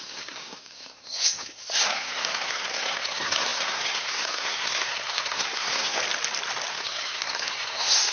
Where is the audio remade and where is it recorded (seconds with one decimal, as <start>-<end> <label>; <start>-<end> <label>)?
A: 0.0-6.0 remade; 6.0-6.7 recorded; 6.7-8.1 remade